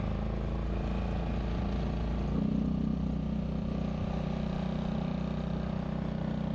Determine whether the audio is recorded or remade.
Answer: recorded